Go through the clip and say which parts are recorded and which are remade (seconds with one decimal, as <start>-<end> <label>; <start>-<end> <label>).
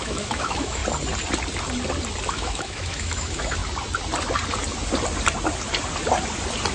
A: 0.0-0.8 remade; 0.8-2.3 recorded; 2.3-3.6 remade; 3.6-6.7 recorded